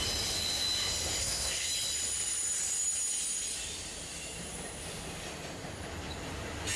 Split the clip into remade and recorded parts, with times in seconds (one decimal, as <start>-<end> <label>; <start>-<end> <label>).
0.0-1.2 recorded; 1.2-1.7 remade; 1.7-6.8 recorded